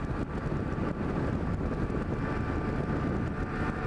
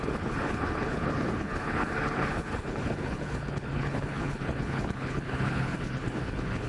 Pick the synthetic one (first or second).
second